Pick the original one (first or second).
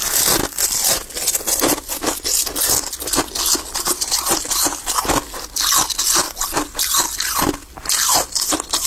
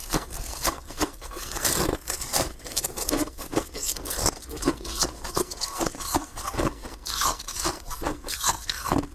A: first